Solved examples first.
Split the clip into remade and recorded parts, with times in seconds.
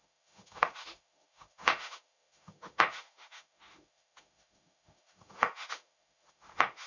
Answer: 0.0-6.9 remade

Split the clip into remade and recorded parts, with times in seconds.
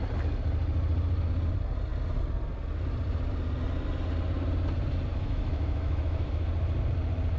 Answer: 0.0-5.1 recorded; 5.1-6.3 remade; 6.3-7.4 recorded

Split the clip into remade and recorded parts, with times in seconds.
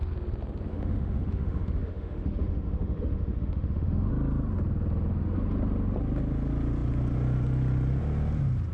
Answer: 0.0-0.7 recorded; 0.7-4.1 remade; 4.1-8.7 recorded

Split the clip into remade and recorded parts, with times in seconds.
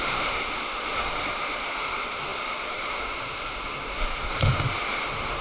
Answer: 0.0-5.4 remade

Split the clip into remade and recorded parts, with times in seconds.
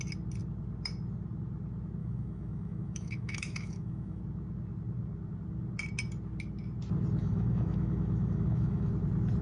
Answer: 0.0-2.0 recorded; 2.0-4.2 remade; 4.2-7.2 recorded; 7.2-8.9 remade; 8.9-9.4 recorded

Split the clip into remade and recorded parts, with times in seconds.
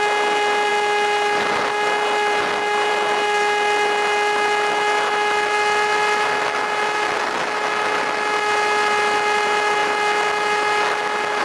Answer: 0.0-11.4 recorded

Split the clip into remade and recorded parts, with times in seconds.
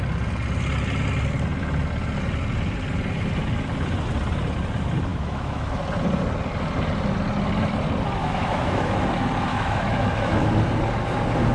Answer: 0.0-5.1 recorded; 5.1-5.8 remade; 5.8-8.2 recorded; 8.2-9.1 remade; 9.1-9.5 recorded; 9.5-10.5 remade; 10.5-11.5 recorded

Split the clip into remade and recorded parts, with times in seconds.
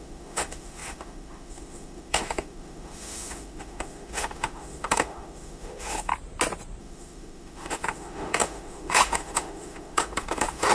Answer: 0.0-6.1 remade; 6.1-6.8 recorded; 6.8-10.7 remade